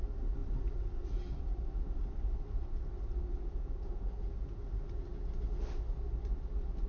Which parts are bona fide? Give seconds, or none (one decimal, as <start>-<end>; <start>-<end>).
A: 0.0-3.2; 4.6-6.9